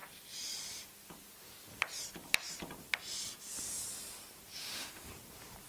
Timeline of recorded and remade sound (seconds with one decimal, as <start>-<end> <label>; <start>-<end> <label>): 0.0-4.6 recorded; 4.6-5.1 remade; 5.1-5.7 recorded